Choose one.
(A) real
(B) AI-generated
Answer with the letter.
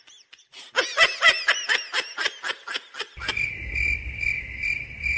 A